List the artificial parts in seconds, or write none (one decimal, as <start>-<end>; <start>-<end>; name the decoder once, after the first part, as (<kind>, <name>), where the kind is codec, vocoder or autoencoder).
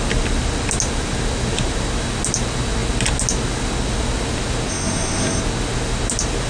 4.7-5.4 (codec, SNAC)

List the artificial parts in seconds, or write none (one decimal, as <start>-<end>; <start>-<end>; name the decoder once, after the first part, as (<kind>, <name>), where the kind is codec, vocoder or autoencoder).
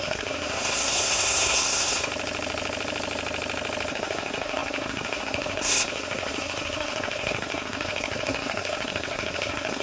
0.0-2.1 (codec, SNAC); 3.9-9.8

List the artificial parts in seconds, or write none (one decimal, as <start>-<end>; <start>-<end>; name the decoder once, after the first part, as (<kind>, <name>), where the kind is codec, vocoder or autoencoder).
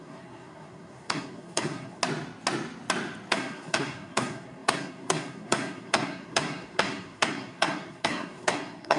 0.0-2.0 (codec, SNAC); 3.3-9.0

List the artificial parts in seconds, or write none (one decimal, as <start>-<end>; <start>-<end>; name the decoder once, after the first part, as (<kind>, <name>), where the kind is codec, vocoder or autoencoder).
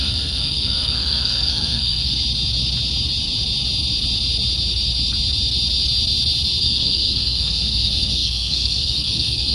0.0-2.1 (codec, SNAC); 6.6-9.5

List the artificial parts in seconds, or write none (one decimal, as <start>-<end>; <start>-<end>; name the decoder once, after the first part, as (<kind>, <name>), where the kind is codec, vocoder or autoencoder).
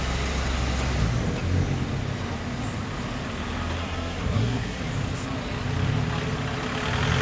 3.8-4.8 (codec, SNAC)